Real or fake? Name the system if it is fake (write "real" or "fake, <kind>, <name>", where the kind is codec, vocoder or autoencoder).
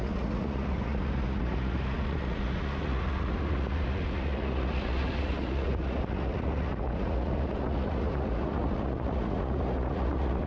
fake, vocoder, Vocos